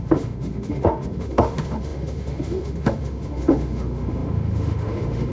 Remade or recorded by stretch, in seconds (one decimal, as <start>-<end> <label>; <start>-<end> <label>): 0.0-5.3 remade

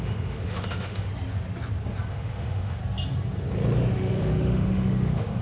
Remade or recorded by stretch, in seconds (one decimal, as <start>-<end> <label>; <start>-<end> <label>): 0.0-1.1 remade; 1.1-2.1 recorded; 2.1-2.8 remade; 2.8-3.9 recorded; 3.9-5.4 remade

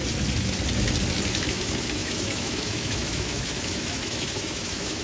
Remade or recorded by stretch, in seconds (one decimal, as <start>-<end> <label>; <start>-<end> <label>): 0.0-1.3 recorded; 1.3-5.0 remade

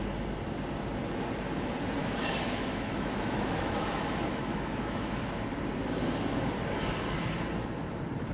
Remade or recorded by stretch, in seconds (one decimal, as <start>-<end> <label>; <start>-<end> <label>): 0.0-2.0 recorded; 2.0-5.2 remade; 5.2-8.3 recorded